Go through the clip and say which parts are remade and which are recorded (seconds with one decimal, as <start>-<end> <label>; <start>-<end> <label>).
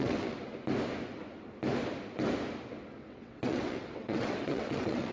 0.0-0.5 remade; 0.5-3.1 recorded; 3.1-5.1 remade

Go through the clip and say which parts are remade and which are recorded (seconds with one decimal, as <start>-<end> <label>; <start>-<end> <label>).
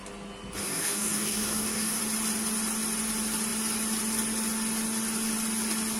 0.0-0.6 recorded; 0.6-2.0 remade; 2.0-6.0 recorded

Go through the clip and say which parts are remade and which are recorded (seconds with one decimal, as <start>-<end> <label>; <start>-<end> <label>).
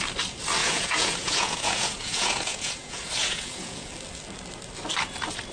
0.0-0.6 recorded; 0.6-3.9 remade; 3.9-5.5 recorded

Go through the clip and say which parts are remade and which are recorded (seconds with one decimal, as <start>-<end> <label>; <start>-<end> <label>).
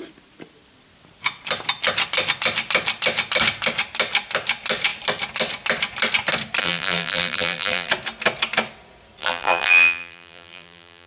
0.0-6.6 recorded; 6.6-7.9 remade; 7.9-9.2 recorded; 9.2-11.1 remade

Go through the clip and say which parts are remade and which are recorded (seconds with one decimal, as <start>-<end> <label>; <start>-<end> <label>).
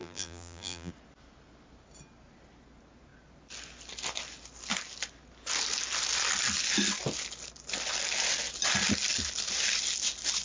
0.0-0.9 remade; 0.9-10.4 recorded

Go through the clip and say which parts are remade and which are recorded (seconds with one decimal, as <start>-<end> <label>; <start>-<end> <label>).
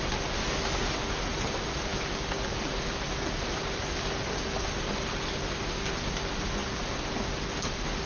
0.0-8.1 recorded